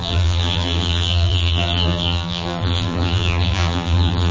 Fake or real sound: fake